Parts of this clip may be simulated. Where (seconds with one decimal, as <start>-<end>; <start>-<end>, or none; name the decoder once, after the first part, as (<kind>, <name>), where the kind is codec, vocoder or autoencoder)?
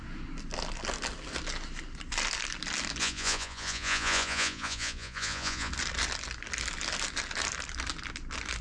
3.0-5.7 (vocoder, Vocos)